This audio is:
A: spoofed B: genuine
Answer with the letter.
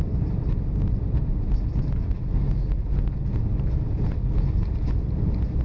B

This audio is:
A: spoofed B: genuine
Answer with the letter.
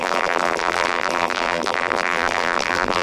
A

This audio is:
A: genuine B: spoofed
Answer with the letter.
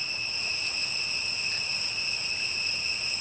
A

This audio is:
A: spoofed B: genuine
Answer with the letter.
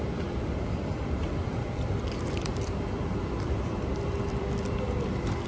A